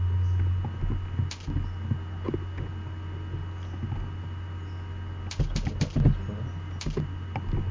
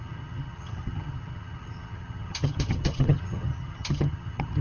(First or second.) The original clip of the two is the first